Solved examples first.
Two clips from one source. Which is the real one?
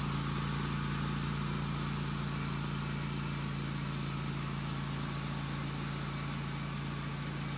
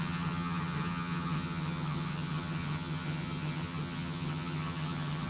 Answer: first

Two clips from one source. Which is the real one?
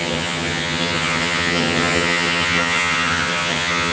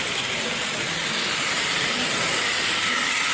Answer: second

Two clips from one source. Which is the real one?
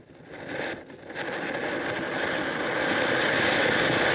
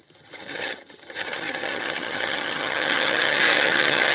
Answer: first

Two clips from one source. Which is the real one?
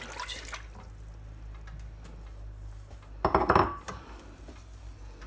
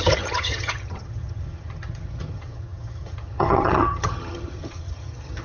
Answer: first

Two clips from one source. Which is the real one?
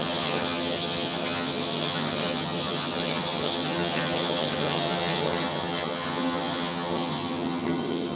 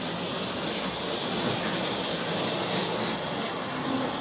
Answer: second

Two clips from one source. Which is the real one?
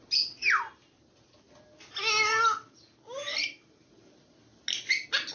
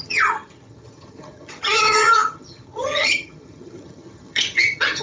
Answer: first